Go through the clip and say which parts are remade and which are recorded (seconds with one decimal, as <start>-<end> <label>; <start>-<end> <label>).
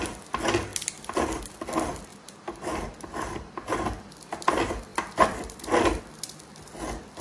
0.0-7.2 recorded